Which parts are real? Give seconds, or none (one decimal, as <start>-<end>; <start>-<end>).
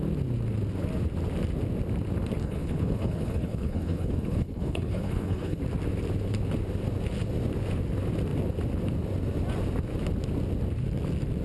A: 0.0-2.4; 5.6-11.4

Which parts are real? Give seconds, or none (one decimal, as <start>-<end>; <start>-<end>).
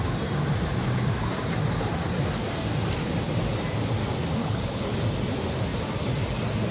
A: 0.0-4.4; 5.0-6.7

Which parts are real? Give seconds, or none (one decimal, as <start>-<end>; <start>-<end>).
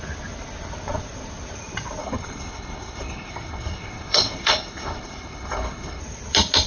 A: 0.0-2.0; 6.0-6.7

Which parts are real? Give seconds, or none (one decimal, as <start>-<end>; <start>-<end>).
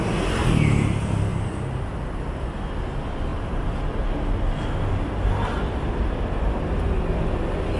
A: 0.0-7.8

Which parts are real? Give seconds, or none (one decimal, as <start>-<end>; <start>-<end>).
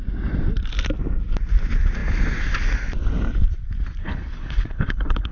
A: 0.0-4.0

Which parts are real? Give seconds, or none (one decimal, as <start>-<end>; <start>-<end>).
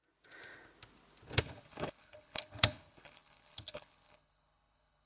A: 0.0-1.4